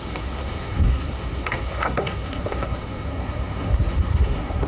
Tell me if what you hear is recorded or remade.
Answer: remade